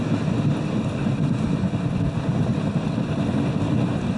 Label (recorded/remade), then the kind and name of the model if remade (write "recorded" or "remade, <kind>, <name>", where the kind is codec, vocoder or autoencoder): recorded